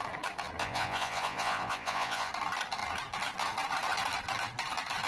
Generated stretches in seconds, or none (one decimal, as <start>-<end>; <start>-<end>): 0.6-2.3